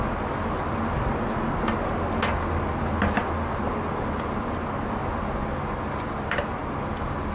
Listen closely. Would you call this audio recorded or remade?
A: recorded